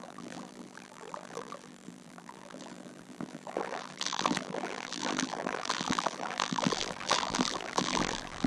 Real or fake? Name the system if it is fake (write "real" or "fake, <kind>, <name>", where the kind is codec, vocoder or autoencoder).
fake, vocoder, BigVGAN v2